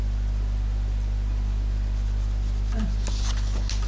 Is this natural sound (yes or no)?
yes